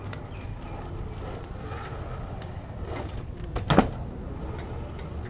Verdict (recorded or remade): recorded